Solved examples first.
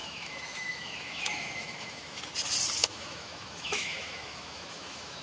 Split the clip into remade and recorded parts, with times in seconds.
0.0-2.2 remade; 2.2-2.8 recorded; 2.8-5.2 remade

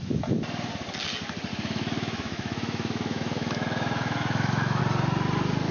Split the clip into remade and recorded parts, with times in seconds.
0.0-1.5 recorded; 1.5-4.8 remade; 4.8-5.7 recorded